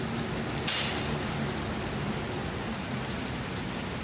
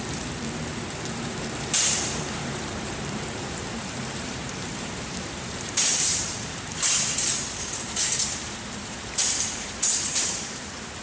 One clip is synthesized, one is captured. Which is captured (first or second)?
first